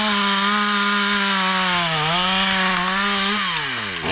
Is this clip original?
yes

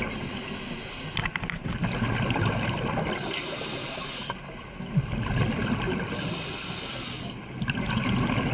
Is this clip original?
yes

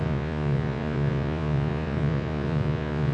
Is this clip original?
no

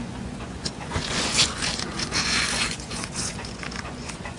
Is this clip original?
no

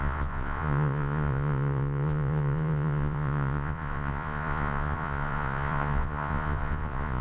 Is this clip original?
no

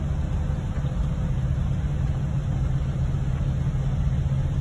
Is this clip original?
yes